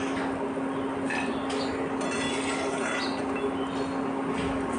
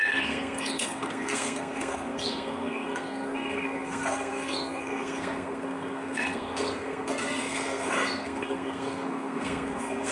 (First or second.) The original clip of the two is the first